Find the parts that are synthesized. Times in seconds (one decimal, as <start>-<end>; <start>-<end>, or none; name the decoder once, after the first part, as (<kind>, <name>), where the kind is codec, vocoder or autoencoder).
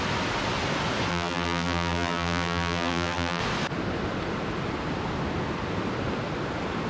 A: 1.1-3.4 (vocoder, BigVGAN v2)